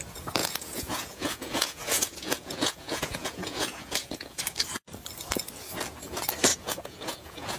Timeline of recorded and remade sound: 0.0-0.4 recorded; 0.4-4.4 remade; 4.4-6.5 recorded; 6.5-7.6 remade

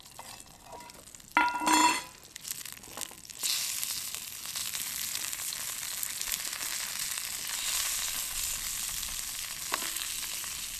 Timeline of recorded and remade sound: 0.0-4.6 recorded; 4.6-7.1 remade; 7.1-10.8 recorded

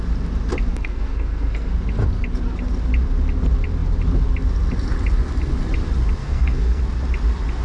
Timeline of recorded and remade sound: 0.0-0.7 recorded; 0.7-1.7 remade; 1.7-6.2 recorded; 6.2-6.8 remade; 6.8-7.6 recorded

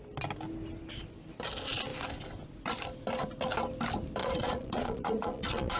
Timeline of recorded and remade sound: 0.0-4.2 recorded; 4.2-5.8 remade

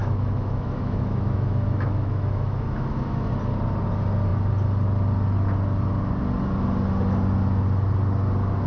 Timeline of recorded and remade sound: 0.0-3.3 remade; 3.3-8.7 recorded